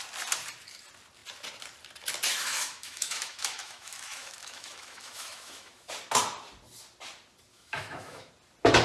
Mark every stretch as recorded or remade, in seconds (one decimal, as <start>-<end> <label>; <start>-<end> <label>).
0.0-2.3 recorded; 2.3-5.9 remade; 5.9-7.5 recorded; 7.5-8.3 remade; 8.3-8.8 recorded